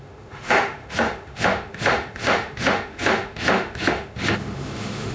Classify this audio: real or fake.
fake